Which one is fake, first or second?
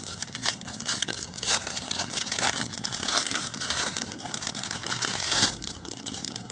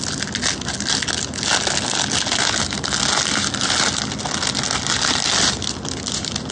first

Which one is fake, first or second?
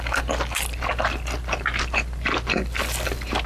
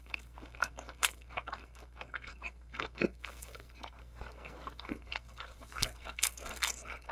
second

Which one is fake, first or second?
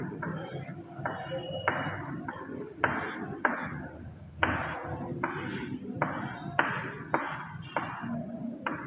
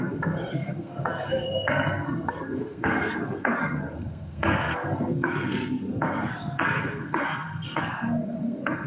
second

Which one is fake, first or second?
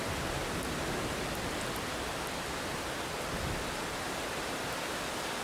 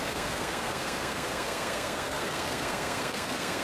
second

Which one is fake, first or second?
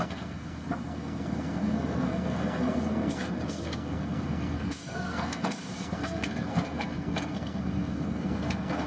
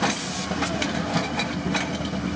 first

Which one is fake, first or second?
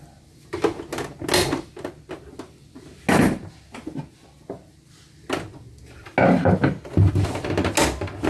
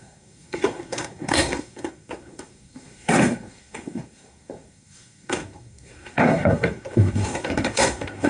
second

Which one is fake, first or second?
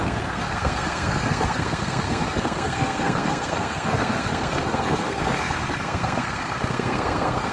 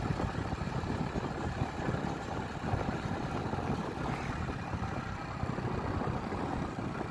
first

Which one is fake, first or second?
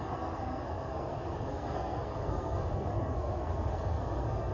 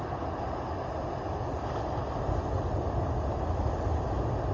first